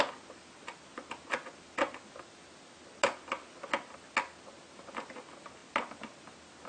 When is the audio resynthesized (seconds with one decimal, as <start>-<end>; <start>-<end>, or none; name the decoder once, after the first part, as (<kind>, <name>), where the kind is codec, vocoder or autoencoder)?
none